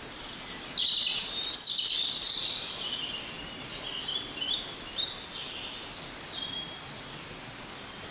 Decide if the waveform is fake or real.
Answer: real